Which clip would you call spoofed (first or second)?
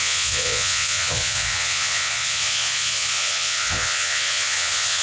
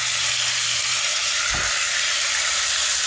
first